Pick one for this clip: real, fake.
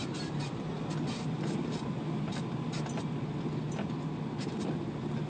real